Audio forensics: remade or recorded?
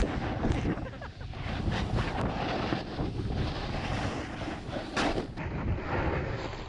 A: recorded